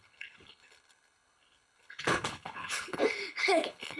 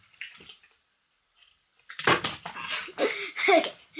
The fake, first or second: first